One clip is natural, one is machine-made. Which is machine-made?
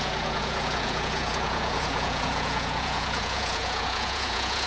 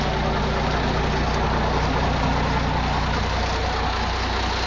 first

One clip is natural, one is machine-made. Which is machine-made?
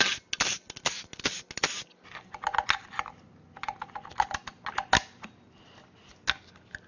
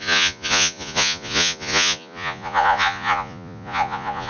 second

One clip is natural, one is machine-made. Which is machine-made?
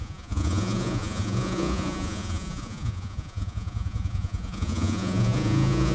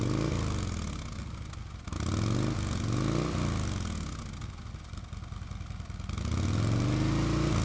first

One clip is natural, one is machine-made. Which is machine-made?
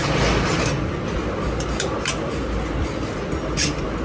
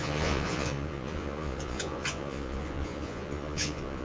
second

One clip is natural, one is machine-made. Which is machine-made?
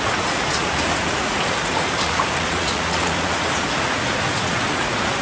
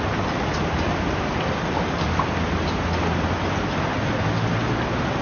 first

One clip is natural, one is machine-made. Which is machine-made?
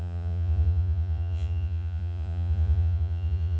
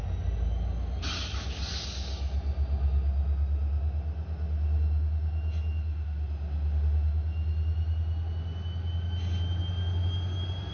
first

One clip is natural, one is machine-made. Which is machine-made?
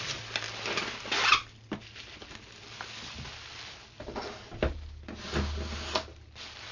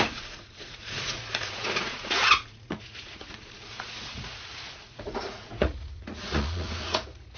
second